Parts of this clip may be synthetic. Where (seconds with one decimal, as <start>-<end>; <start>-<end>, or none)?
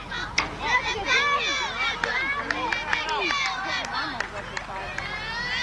none